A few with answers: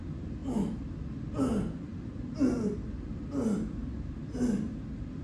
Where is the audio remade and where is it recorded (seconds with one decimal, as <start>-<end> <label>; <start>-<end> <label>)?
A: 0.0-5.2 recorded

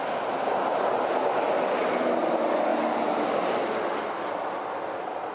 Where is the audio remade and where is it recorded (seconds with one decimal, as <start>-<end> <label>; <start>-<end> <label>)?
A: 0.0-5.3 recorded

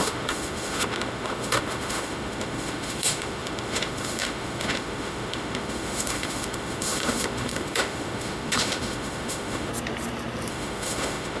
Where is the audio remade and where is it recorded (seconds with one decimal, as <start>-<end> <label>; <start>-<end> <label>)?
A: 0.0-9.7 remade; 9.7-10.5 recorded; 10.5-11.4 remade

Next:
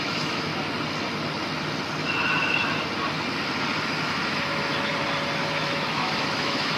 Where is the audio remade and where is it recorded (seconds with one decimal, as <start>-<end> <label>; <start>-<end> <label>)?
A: 0.0-0.5 remade; 0.5-4.0 recorded; 4.0-4.9 remade; 4.9-5.4 recorded; 5.4-6.8 remade

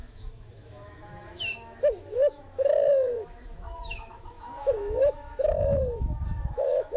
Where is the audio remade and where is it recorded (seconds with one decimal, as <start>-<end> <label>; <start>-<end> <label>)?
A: 0.0-7.0 remade

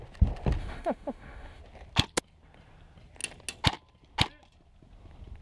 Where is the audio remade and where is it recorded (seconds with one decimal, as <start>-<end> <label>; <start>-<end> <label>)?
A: 0.0-0.6 recorded; 0.6-1.6 remade; 1.6-5.4 recorded

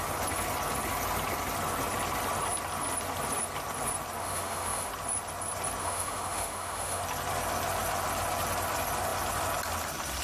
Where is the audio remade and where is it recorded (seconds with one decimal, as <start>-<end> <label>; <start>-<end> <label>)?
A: 0.0-4.2 recorded; 4.2-4.9 remade; 4.9-5.8 recorded; 5.8-7.0 remade; 7.0-10.2 recorded

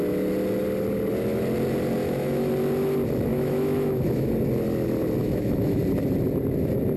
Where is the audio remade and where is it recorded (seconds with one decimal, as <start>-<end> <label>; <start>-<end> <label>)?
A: 0.0-2.0 recorded; 2.0-2.5 remade; 2.5-3.3 recorded; 3.3-4.3 remade; 4.3-5.2 recorded; 5.2-5.8 remade; 5.8-7.0 recorded